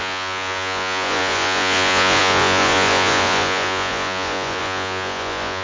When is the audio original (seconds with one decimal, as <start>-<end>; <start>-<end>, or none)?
none